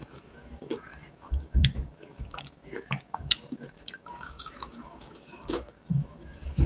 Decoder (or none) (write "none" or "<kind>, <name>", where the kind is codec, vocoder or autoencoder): autoencoder, DAC-VAE